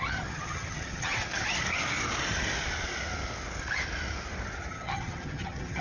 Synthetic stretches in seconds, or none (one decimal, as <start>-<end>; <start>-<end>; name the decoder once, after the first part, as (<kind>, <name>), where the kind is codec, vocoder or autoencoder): 0.0-1.2 (vocoder, HiFi-GAN); 4.7-5.8